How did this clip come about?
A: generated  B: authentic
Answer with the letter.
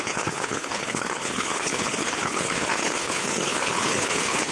A